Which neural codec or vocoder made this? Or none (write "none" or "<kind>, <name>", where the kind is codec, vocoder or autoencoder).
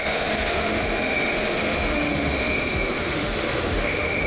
autoencoder, DAC-VAE